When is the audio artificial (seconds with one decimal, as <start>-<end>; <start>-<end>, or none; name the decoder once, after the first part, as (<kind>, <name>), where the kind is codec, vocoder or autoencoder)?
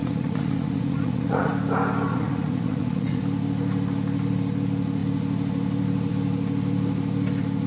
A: 0.0-1.5 (vocoder, Vocos); 2.1-3.2